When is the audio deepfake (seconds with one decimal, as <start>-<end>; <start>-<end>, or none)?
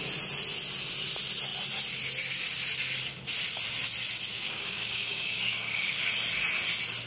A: 4.3-6.1